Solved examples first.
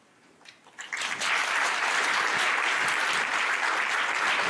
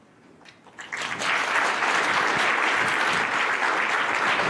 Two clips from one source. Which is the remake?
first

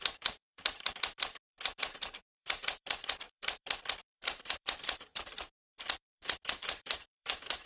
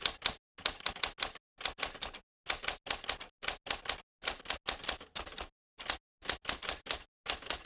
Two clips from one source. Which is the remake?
first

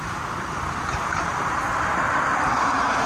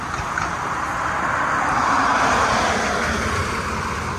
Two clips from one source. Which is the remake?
first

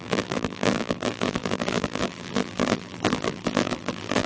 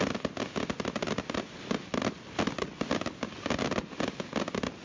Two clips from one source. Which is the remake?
first